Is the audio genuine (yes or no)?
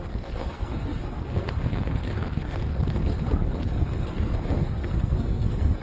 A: no